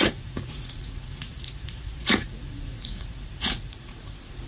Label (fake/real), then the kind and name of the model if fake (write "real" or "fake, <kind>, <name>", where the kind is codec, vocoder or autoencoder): fake, vocoder, Vocos